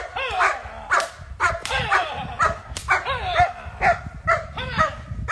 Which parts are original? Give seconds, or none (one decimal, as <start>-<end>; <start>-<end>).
0.0-1.6; 4.8-5.3